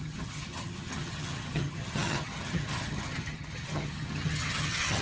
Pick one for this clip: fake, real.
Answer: fake